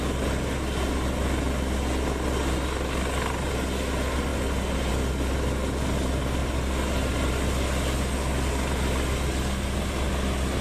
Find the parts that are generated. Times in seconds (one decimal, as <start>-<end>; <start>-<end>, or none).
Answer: none